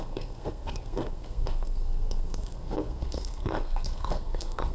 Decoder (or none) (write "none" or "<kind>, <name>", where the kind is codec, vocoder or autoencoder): codec, SNAC